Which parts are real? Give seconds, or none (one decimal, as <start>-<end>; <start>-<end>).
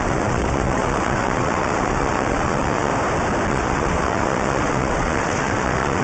2.9-3.5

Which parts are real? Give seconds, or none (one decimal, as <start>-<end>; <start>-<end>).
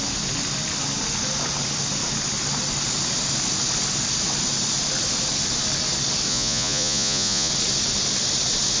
0.0-6.3; 7.5-8.8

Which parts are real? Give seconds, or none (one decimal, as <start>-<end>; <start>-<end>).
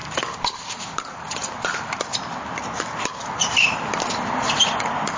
0.0-5.2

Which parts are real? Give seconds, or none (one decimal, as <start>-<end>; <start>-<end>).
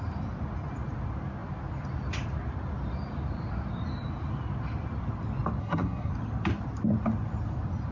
0.0-5.6; 6.1-7.9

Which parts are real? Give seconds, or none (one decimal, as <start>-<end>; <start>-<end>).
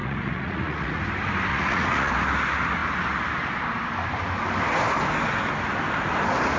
1.0-1.5; 2.1-6.6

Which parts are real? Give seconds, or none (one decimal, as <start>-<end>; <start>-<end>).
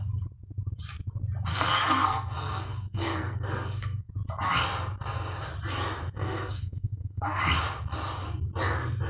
0.0-1.5; 4.1-6.2; 7.4-9.1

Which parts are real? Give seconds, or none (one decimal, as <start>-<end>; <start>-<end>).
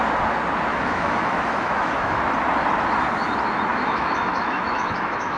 0.0-0.7; 2.2-3.7